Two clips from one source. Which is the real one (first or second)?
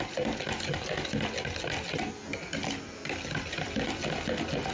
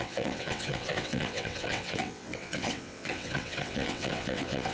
first